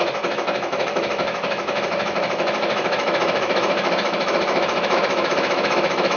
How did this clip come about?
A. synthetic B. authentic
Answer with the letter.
A